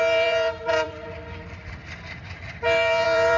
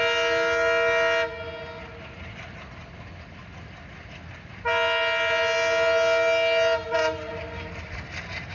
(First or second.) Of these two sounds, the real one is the second